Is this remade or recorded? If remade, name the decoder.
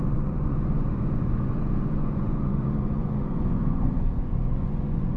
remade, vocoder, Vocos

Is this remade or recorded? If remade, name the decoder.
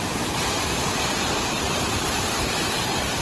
remade, vocoder, BigVGAN v2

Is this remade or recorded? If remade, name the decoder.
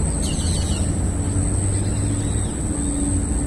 recorded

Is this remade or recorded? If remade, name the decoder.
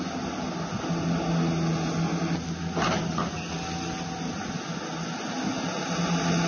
recorded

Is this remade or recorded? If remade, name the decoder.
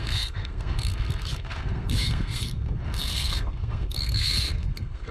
remade, codec, SNAC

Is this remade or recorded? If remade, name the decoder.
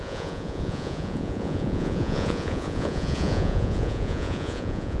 remade, vocoder, Vocos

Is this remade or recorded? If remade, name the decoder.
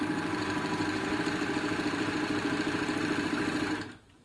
remade, vocoder, BigVGAN v2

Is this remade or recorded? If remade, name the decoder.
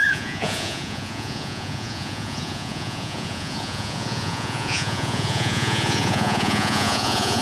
remade, vocoder, Vocos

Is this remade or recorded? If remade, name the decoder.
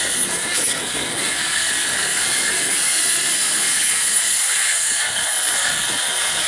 remade, codec, SNAC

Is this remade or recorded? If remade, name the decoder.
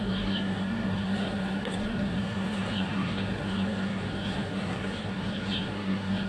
remade, codec, SNAC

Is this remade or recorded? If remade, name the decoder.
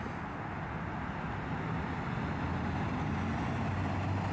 recorded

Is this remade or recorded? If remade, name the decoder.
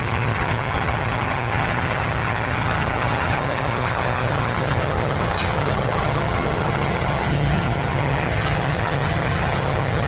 remade, vocoder, HiFi-GAN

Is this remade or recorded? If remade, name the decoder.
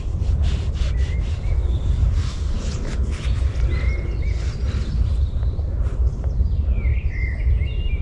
recorded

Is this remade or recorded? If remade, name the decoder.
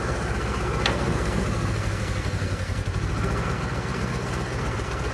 remade, codec, SNAC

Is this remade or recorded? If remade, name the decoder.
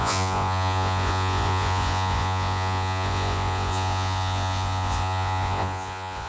remade, vocoder, Vocos